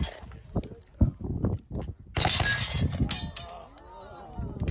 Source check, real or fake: real